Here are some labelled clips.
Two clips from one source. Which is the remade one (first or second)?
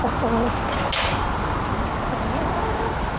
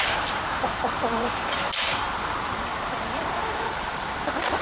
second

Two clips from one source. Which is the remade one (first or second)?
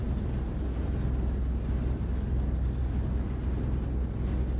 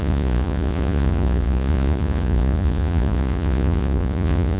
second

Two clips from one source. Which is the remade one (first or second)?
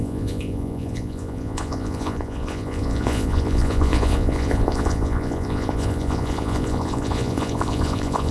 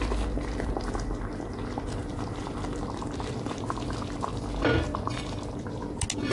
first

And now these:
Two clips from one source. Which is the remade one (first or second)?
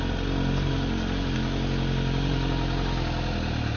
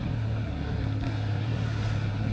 second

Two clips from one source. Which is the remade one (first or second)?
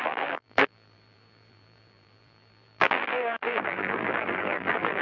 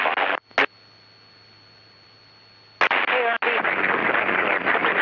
first